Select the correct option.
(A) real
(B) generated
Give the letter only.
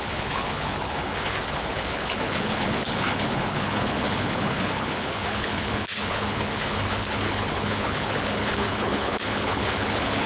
B